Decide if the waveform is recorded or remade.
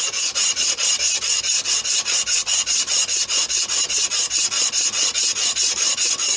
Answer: recorded